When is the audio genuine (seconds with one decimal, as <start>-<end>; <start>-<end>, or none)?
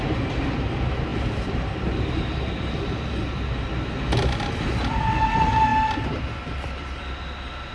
0.0-7.7